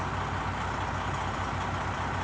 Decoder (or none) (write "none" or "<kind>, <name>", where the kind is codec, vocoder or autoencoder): none